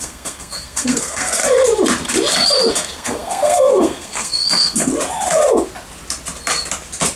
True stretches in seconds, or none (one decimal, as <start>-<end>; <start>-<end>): 1.4-2.7; 4.9-7.2